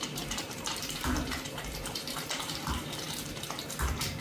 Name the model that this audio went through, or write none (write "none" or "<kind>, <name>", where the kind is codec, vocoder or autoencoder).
vocoder, BigVGAN v2